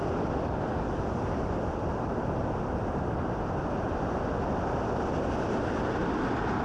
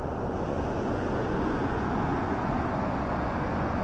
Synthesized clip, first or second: second